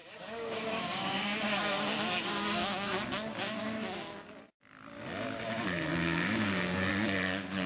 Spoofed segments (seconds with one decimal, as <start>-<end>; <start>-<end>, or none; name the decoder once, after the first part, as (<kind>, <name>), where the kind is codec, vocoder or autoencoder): 0.0-4.3 (codec, DAC); 5.9-6.9